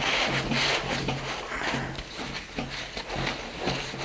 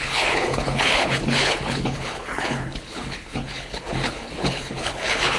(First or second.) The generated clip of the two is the second